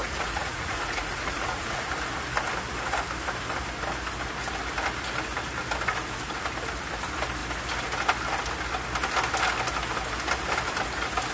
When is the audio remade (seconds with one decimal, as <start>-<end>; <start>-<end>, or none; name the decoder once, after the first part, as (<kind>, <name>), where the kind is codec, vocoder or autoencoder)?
0.0-1.9 (vocoder, Vocos)